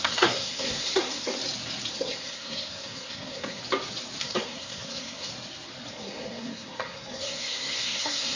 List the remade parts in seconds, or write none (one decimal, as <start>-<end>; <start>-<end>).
0.0-1.3; 1.9-3.6; 4.2-5.3; 5.9-8.4